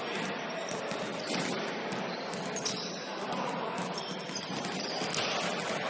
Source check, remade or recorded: recorded